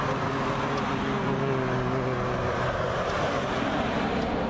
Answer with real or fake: real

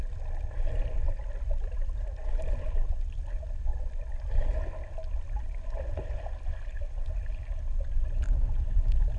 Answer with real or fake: real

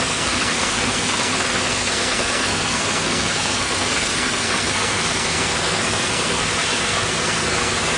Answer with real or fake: fake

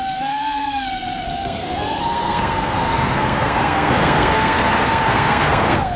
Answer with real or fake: fake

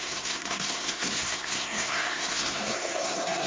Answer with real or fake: fake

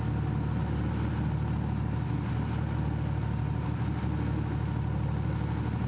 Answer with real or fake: real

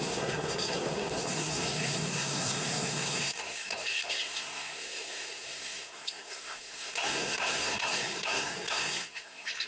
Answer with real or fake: fake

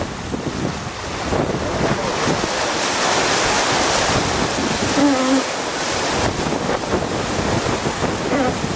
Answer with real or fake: real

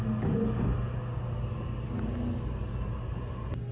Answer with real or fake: real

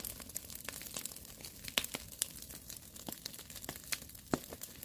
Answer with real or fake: real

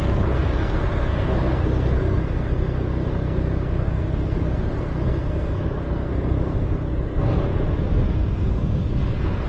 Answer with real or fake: fake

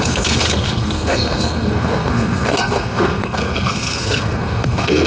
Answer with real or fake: fake